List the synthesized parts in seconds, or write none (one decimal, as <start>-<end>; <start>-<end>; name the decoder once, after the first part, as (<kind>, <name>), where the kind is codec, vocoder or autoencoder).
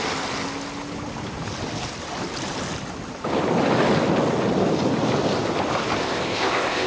6.0-6.9 (codec, ZipCodec)